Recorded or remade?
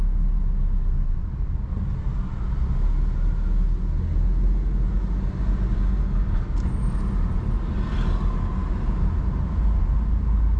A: recorded